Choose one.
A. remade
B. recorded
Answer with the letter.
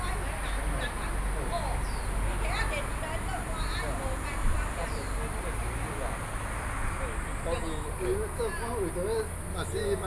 B